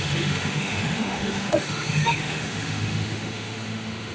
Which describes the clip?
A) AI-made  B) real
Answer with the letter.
A